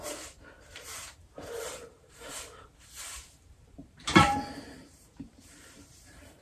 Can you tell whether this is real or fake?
fake